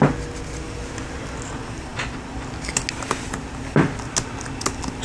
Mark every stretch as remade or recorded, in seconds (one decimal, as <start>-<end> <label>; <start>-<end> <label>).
0.0-5.0 recorded